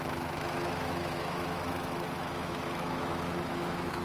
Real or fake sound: fake